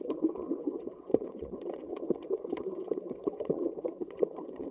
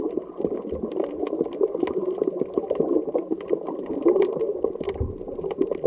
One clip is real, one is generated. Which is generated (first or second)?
first